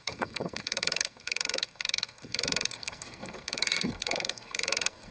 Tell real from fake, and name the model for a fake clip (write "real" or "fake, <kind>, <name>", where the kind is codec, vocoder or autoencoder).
fake, codec, SNAC